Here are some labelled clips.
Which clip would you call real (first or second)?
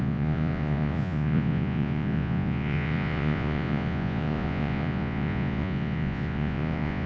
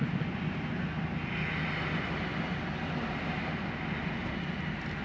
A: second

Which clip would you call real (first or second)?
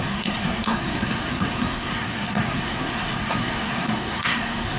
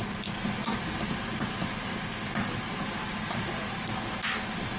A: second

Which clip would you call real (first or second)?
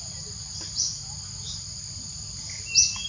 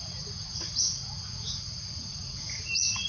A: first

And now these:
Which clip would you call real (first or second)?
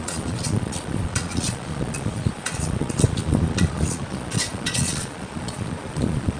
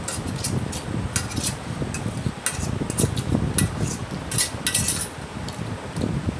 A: second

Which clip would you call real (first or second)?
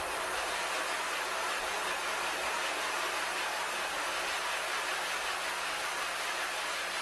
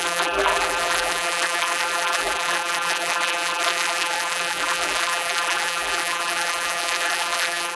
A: first